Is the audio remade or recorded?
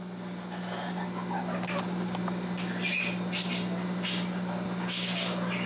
recorded